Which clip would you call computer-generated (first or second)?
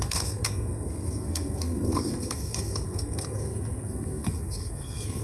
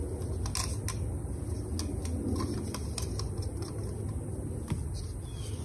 first